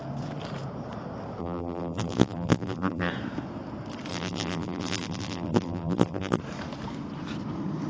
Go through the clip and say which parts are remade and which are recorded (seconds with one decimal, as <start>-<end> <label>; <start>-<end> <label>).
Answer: 0.0-1.4 recorded; 1.4-3.1 remade; 3.1-4.1 recorded; 4.1-6.4 remade; 6.4-7.9 recorded